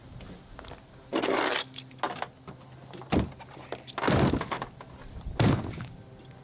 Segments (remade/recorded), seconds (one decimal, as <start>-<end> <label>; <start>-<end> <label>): 0.0-6.4 recorded